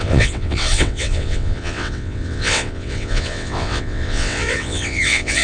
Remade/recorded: remade